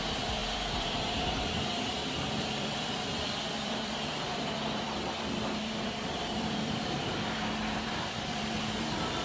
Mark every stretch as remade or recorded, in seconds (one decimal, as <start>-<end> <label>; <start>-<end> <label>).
0.0-9.2 remade